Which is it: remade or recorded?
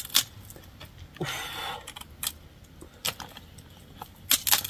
recorded